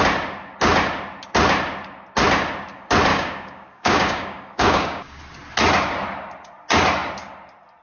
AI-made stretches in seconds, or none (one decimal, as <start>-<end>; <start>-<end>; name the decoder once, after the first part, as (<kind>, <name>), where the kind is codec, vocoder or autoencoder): 3.1-5.2 (codec, DAC)